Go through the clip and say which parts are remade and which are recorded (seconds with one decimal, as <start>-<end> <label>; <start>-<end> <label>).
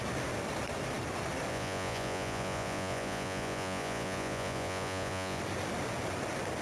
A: 0.0-1.5 recorded; 1.5-5.4 remade; 5.4-6.6 recorded